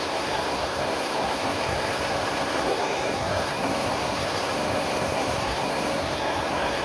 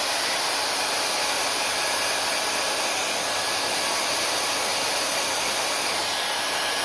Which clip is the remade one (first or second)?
first